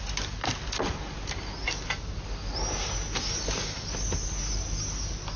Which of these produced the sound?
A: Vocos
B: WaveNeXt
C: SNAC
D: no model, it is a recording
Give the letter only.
D